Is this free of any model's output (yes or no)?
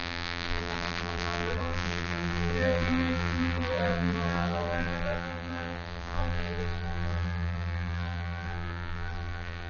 no